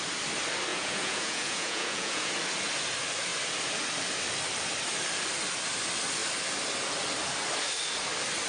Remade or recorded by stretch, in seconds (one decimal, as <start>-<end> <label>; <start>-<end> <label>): 0.0-0.7 recorded; 0.7-2.3 remade; 2.3-8.5 recorded